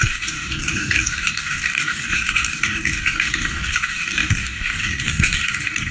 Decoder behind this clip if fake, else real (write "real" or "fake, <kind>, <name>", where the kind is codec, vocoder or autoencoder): fake, codec, DAC